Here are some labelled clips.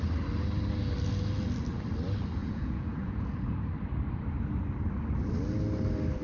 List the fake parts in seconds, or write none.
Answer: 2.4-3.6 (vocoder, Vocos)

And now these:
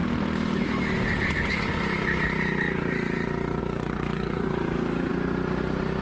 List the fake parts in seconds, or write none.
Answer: 3.6-5.1 (codec, DAC)

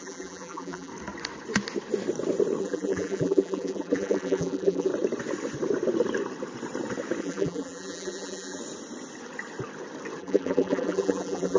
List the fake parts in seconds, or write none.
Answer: 0.0-0.9 (vocoder, BigVGAN v2); 2.6-4.9; 7.2-8.6; 10.2-11.6

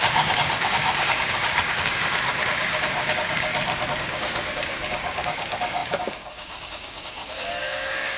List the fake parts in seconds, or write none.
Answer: 0.0-3.5 (codec, DAC); 4.0-8.2

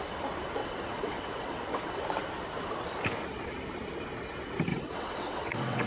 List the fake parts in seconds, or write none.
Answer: 0.6-2.0 (vocoder, WaveNeXt); 4.7-5.9

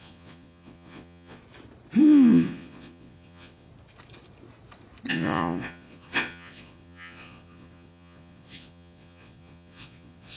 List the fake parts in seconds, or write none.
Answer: 0.0-1.4 (vocoder, Vocos); 2.0-3.7; 5.1-10.4

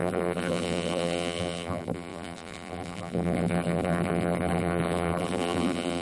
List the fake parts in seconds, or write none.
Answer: 0.0-6.0 (vocoder, BigVGAN v2)

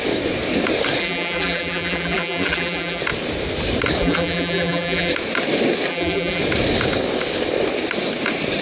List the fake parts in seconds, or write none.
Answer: 1.0-3.0 (vocoder, BigVGAN v2); 4.0-5.1; 5.9-6.4